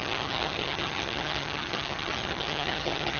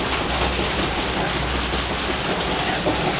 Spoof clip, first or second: first